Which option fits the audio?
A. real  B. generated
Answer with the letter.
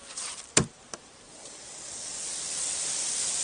A